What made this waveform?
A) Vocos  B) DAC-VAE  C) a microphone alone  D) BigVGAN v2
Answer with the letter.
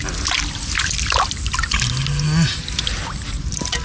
C